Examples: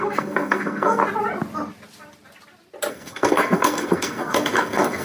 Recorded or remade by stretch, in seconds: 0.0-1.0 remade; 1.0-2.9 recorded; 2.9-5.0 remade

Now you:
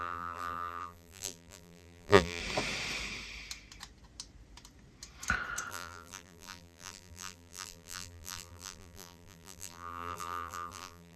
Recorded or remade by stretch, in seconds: 0.0-2.4 remade; 2.4-5.7 recorded; 5.7-11.2 remade

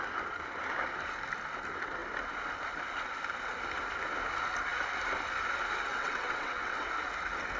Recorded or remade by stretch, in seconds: 0.0-5.9 recorded; 5.9-6.9 remade; 6.9-7.6 recorded

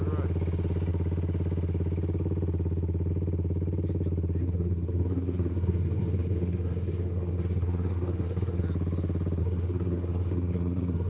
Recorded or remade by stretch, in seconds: 0.0-4.4 recorded; 4.4-8.6 remade; 8.6-9.4 recorded; 9.4-11.1 remade

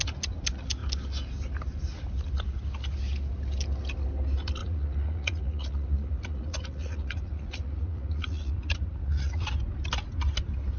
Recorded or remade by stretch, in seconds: 0.0-4.6 recorded; 4.6-9.5 remade; 9.5-10.8 recorded

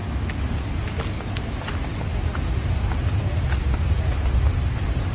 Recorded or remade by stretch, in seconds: 0.0-5.1 recorded

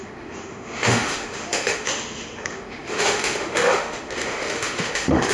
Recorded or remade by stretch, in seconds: 0.0-5.3 remade

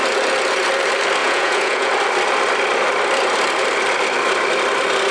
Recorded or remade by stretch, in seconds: 0.0-1.2 recorded; 1.2-1.9 remade; 1.9-5.1 recorded